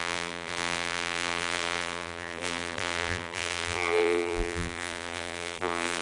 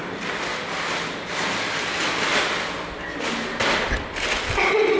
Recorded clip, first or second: second